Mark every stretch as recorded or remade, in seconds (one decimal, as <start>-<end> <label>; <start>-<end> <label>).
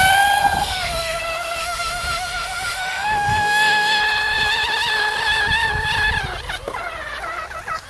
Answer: 0.0-0.6 recorded; 0.6-1.2 remade; 1.2-1.6 recorded; 1.6-4.0 remade; 4.0-7.9 recorded